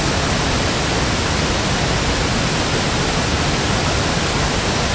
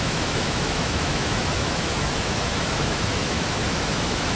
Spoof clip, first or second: second